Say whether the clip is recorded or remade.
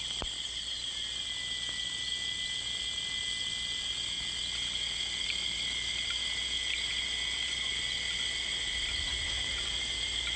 recorded